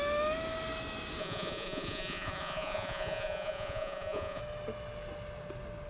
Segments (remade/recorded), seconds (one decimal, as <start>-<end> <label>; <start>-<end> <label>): 0.0-1.2 recorded; 1.2-4.4 remade; 4.4-5.9 recorded